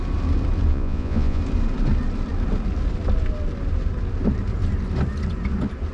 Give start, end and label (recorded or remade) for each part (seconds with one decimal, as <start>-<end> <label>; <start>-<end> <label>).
0.0-0.7 recorded; 0.7-1.4 remade; 1.4-5.9 recorded